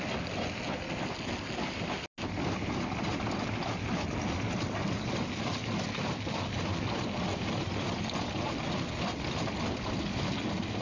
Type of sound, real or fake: real